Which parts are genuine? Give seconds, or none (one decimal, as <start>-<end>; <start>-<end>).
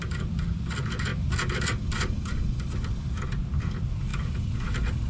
0.0-5.1